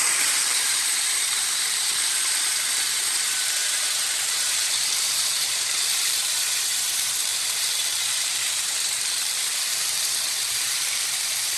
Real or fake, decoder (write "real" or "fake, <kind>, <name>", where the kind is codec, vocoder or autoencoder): fake, vocoder, BigVGAN v2